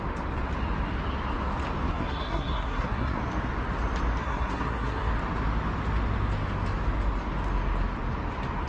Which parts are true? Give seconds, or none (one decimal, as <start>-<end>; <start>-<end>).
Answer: 0.0-1.9; 3.2-4.2; 5.1-8.7